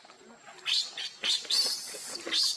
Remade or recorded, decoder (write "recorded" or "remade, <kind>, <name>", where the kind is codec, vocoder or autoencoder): recorded